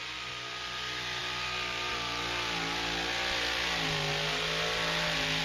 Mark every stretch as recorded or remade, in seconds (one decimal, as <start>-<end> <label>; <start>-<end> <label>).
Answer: 0.0-5.4 recorded